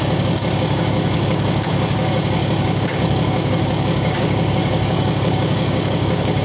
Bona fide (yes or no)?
no